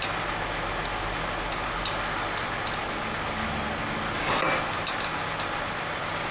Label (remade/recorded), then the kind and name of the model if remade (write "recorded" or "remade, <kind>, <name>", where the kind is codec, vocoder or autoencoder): recorded